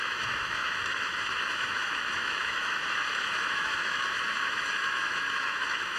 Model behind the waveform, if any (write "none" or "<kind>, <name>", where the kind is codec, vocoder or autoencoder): autoencoder, DAC-VAE